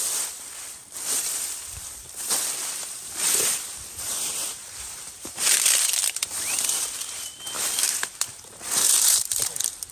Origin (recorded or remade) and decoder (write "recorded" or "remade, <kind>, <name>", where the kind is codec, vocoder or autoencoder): remade, vocoder, BigVGAN v2